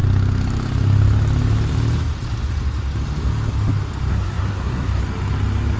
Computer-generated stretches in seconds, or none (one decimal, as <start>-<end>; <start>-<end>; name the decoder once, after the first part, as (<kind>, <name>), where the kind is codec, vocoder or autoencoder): 4.1-5.0 (codec, SNAC)